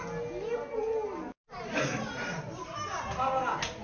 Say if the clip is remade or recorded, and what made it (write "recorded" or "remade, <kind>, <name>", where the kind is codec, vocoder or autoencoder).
recorded